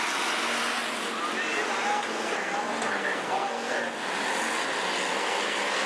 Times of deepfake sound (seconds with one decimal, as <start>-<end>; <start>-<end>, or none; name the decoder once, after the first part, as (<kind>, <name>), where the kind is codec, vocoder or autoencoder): 1.9-3.8 (codec, SNAC); 5.1-5.9

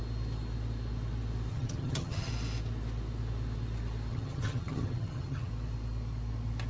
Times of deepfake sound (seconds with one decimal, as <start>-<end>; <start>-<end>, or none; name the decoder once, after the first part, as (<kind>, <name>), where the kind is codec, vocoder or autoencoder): 1.5-2.3 (vocoder, HiFi-GAN); 4.1-5.5

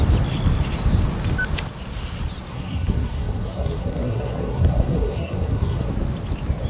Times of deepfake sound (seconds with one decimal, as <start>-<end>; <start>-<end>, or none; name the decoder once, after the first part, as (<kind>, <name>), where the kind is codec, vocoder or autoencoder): 2.5-5.9 (codec, SNAC)

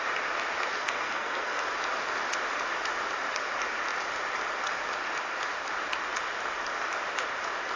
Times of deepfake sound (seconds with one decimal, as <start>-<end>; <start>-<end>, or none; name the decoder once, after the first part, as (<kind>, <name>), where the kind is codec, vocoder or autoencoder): 0.8-1.6 (codec, SNAC)

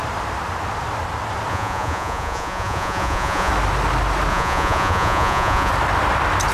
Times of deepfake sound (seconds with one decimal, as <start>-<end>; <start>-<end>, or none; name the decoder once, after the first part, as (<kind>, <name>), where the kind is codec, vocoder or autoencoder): 1.5-3.5 (vocoder, Vocos); 4.3-5.7

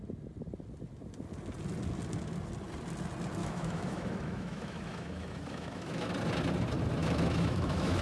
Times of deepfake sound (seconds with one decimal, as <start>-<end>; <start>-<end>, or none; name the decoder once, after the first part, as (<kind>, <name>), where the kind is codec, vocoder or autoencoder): 3.4-6.1 (autoencoder, DAC-VAE); 7.0-8.0

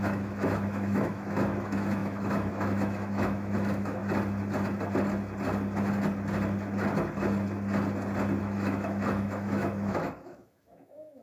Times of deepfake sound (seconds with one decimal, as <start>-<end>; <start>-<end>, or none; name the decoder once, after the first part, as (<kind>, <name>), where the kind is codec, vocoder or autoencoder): 0.0-4.0 (autoencoder, DAC-VAE); 8.4-11.2

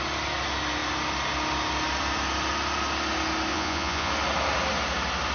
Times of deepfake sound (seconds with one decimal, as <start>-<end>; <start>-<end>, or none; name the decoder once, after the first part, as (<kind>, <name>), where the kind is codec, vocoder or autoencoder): 3.5-4.1 (vocoder, Vocos)